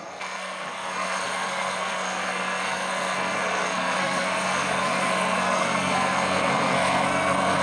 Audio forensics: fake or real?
fake